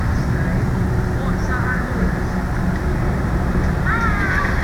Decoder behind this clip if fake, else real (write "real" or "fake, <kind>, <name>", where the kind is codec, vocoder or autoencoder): real